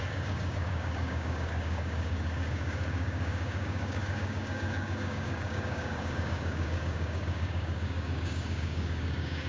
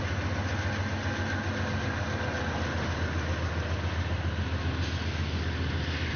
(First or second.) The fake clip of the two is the first